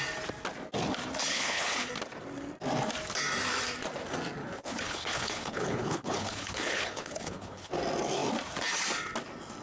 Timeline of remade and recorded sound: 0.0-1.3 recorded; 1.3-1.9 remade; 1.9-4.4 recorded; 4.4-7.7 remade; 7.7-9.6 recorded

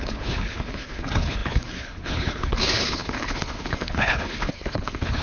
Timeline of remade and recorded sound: 0.0-5.2 remade

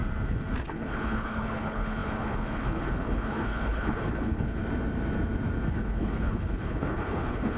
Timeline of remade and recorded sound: 0.0-0.6 recorded; 0.6-4.6 remade; 4.6-5.7 recorded; 5.7-7.6 remade

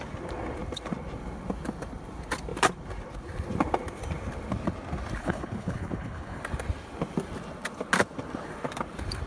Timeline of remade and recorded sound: 0.0-5.2 recorded; 5.2-6.4 remade; 6.4-9.3 recorded